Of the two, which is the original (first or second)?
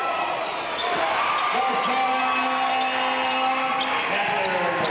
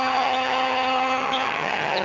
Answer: first